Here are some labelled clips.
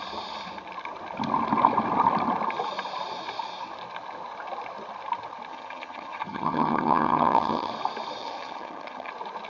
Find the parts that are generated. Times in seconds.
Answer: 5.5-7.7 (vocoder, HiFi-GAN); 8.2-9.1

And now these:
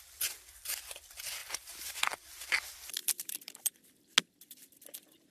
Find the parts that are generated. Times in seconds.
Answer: 1.4-2.5 (vocoder, BigVGAN v2); 3.0-4.1

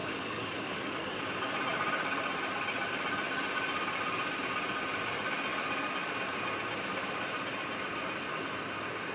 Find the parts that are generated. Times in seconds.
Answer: 0.0-1.2 (codec, DAC)

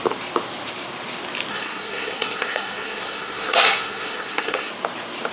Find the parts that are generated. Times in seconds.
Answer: 1.5-4.7 (codec, SNAC)

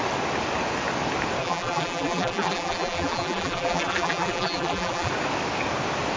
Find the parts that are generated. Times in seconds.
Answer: 1.4-5.1 (vocoder, BigVGAN v2)

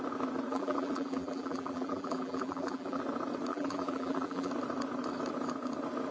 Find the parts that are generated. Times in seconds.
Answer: 0.5-3.0 (vocoder, BigVGAN v2); 3.5-4.5